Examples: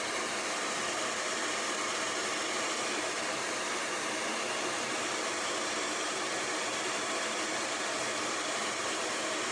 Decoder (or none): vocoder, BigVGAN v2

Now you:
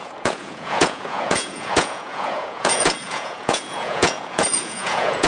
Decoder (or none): vocoder, Vocos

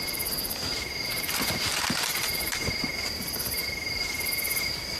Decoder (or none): vocoder, BigVGAN v2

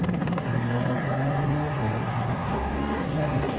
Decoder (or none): codec, SNAC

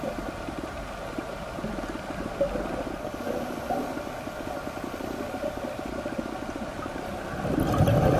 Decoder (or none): none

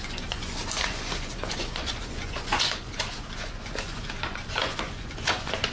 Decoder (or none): vocoder, Vocos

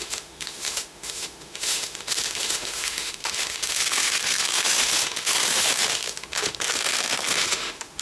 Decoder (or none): autoencoder, DAC-VAE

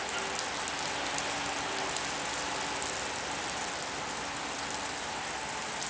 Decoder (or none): none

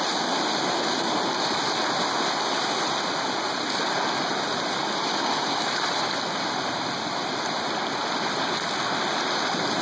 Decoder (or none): none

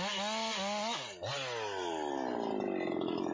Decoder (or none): none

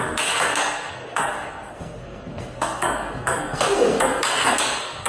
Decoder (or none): codec, SNAC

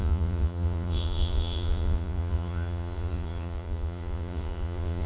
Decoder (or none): vocoder, Vocos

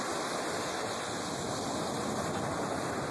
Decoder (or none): none